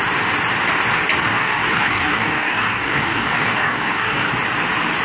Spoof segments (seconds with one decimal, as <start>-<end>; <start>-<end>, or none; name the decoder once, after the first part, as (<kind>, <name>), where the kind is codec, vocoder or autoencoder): 1.3-4.3 (codec, DAC)